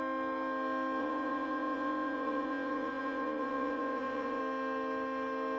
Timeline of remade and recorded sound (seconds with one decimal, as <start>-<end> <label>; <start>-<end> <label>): 0.0-1.0 recorded; 1.0-4.4 remade; 4.4-5.6 recorded